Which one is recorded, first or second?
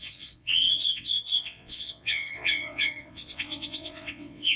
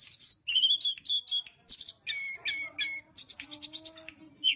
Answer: second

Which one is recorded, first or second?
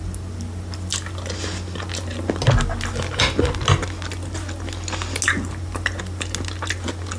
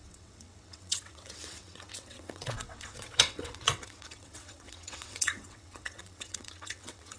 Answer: first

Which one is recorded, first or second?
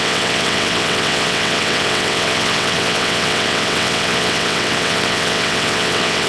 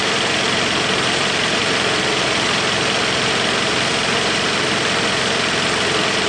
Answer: second